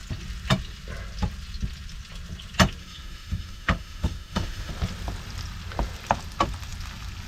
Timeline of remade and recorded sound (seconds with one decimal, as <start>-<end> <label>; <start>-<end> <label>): 0.0-2.8 recorded; 2.8-4.7 remade; 4.7-7.3 recorded